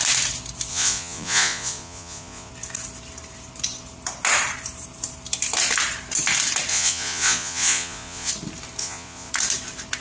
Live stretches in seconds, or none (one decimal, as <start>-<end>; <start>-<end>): 0.0-0.7; 2.5-6.7; 8.3-8.8; 9.3-10.0